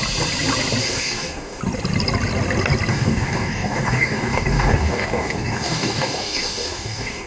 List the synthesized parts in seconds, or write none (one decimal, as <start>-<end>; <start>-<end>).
0.8-1.6; 2.9-7.3